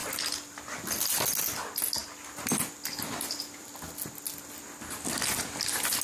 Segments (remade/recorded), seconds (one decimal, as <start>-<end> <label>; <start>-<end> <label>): 0.0-6.0 recorded